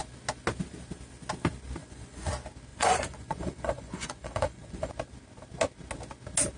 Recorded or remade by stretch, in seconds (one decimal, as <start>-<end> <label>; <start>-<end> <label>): 0.0-1.8 recorded; 1.8-2.3 remade; 2.3-2.7 recorded; 2.7-4.9 remade; 4.9-6.6 recorded